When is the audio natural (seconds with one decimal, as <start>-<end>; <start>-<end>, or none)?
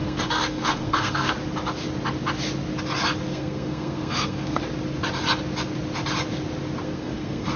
1.3-3.3; 4.6-6.8